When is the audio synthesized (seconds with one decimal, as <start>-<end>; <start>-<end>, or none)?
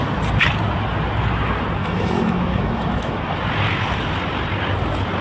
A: 1.8-3.4